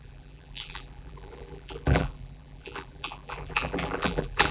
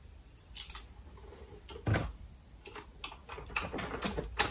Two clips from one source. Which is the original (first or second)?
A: second